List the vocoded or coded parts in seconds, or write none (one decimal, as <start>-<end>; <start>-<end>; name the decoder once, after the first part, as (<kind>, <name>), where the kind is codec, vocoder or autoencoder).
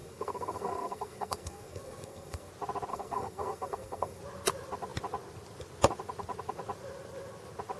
0.0-2.5 (codec, SNAC); 2.9-4.2